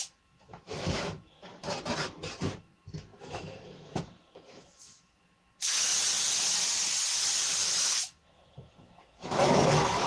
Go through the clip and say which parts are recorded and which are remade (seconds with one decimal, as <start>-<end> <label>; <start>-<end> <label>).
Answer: 0.0-1.5 remade; 1.5-2.6 recorded; 2.6-5.9 remade; 5.9-7.8 recorded; 7.8-10.1 remade